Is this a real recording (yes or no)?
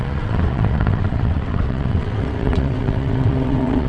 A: no